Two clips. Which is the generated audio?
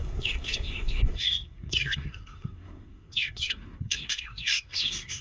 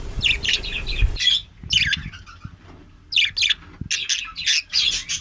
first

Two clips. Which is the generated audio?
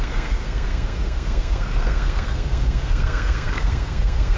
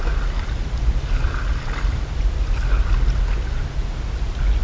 first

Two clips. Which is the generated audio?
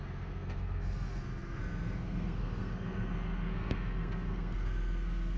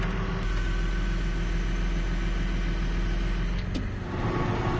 first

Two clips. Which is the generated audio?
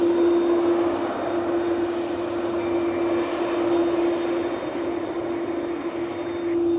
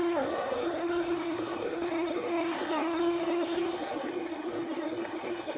second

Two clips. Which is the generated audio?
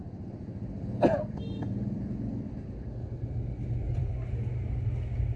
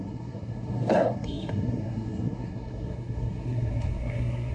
second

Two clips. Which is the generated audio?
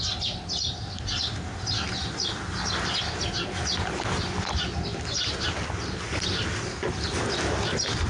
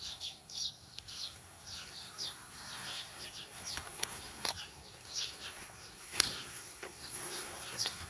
second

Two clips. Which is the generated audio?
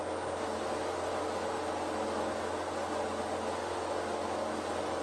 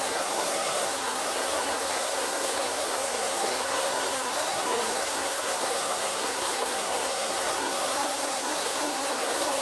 second